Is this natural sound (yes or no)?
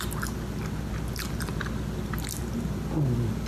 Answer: yes